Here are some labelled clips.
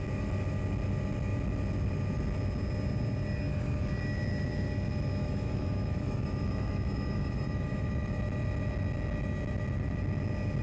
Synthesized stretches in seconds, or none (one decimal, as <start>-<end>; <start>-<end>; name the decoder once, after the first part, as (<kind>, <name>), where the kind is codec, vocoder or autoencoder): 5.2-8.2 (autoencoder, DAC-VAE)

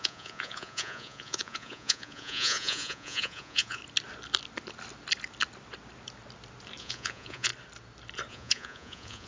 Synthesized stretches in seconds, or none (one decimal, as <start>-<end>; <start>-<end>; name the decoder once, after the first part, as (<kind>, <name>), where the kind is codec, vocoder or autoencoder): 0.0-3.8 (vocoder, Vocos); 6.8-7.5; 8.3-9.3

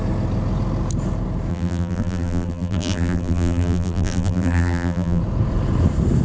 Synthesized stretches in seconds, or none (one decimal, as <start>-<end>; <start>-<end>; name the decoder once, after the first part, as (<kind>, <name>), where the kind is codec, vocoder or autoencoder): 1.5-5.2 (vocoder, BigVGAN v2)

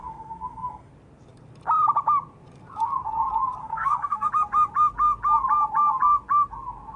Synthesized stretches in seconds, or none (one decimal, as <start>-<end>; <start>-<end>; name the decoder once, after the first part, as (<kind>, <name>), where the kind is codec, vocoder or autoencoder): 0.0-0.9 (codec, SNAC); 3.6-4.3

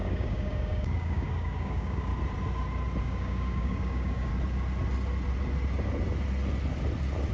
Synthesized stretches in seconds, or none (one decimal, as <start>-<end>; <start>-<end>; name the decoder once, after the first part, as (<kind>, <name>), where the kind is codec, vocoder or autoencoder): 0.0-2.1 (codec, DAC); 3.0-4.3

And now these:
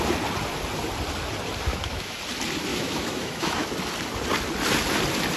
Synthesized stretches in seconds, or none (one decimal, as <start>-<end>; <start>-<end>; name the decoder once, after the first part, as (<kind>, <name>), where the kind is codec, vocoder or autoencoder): 1.7-2.2 (autoencoder, DAC-VAE); 2.7-3.7